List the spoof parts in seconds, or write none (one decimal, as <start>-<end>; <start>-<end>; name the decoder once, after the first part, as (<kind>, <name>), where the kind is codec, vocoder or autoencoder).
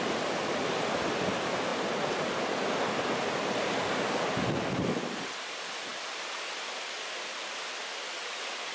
none